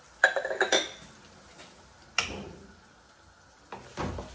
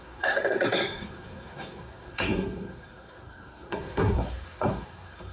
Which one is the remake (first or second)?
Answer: second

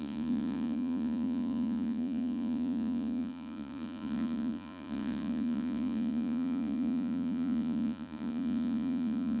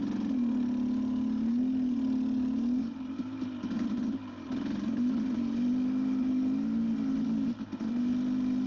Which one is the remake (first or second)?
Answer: first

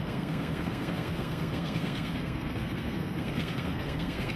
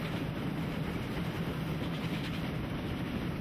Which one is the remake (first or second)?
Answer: first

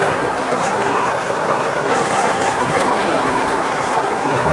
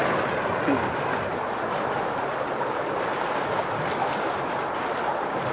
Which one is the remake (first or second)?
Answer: first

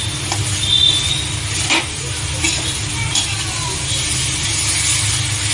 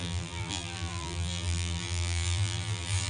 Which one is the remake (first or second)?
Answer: second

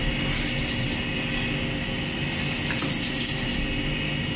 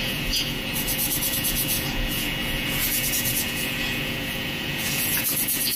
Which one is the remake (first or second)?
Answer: second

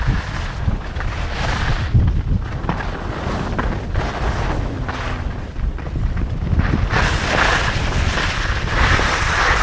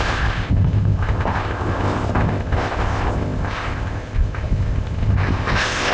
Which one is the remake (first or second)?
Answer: second